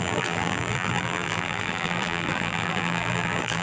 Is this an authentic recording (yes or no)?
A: no